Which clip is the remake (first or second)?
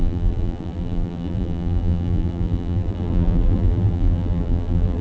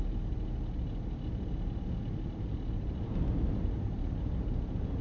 first